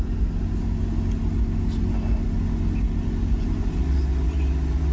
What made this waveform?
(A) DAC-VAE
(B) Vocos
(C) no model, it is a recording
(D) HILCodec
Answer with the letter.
C